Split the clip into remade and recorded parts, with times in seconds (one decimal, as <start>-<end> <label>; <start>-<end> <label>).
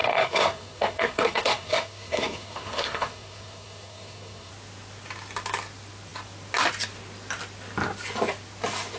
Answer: 0.0-4.5 remade; 4.5-9.0 recorded